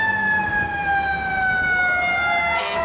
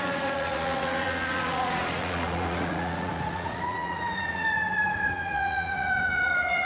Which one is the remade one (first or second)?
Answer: second